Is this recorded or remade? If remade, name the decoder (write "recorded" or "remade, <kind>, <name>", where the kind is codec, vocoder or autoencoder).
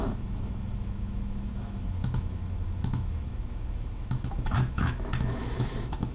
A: remade, autoencoder, DAC-VAE